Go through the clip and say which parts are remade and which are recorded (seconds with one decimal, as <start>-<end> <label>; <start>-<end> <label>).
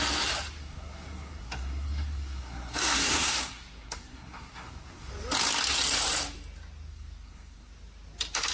0.0-0.6 recorded; 0.6-5.1 remade; 5.1-6.9 recorded; 6.9-7.7 remade; 7.7-8.5 recorded